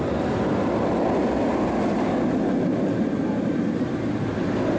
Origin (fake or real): real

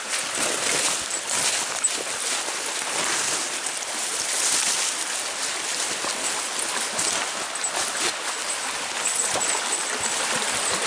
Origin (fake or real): real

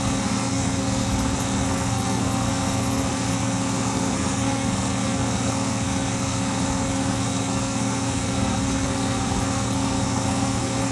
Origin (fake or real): fake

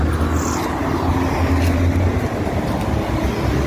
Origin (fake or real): real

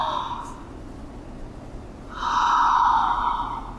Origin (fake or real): real